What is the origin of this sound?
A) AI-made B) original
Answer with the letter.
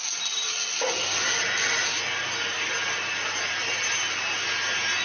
B